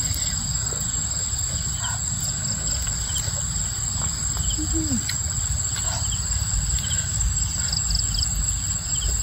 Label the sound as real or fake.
real